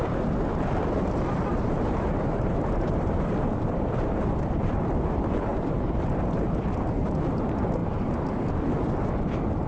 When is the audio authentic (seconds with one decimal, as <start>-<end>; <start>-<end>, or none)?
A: 0.0-1.5; 3.3-5.5; 6.1-9.7